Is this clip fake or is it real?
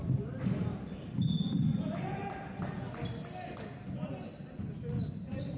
real